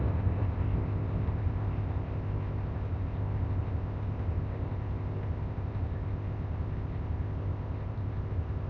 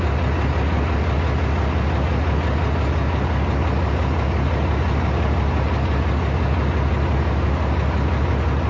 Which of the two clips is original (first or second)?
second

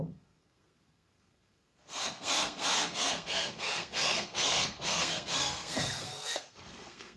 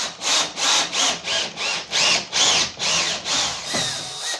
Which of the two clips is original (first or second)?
second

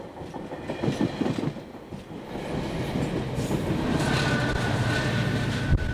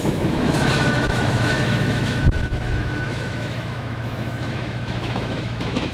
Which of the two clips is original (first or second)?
first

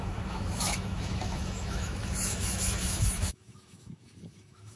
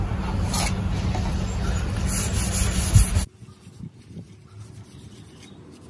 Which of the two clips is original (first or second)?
second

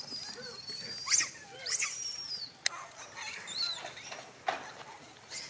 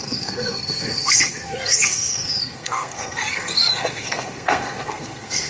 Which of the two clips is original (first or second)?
first